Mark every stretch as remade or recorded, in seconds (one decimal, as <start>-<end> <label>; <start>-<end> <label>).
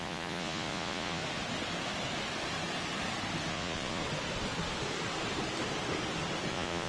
0.0-1.2 remade; 1.2-3.5 recorded; 3.5-4.0 remade; 4.0-6.5 recorded; 6.5-6.9 remade